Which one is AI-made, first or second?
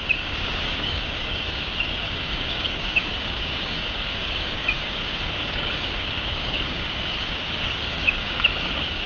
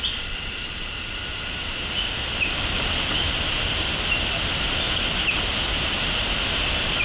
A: first